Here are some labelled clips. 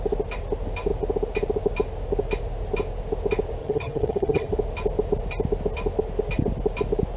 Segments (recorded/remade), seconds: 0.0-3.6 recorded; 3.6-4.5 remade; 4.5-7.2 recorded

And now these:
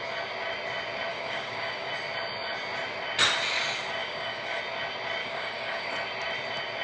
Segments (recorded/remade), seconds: 0.0-1.1 recorded; 1.1-1.9 remade; 1.9-4.0 recorded; 4.0-4.6 remade; 4.6-5.2 recorded; 5.2-5.9 remade; 5.9-6.8 recorded